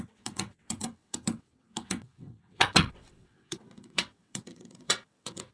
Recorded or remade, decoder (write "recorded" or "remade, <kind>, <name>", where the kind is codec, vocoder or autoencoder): remade, vocoder, WaveNeXt